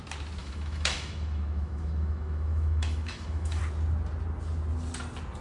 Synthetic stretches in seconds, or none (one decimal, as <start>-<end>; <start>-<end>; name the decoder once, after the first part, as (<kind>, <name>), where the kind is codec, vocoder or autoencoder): 0.4-3.6 (autoencoder, DAC-VAE)